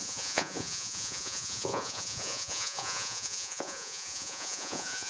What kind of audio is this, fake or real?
fake